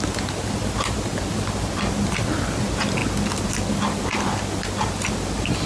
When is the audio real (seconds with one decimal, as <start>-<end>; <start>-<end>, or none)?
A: 0.0-5.7